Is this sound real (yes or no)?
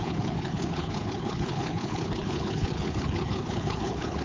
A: no